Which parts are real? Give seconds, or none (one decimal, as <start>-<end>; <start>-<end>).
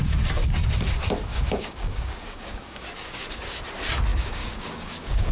0.0-1.3; 3.6-4.1